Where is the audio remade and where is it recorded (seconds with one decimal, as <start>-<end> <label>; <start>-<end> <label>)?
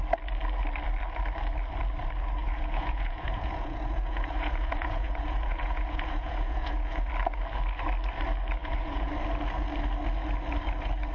0.0-2.4 recorded; 2.4-7.1 remade; 7.1-8.6 recorded; 8.6-9.1 remade; 9.1-11.1 recorded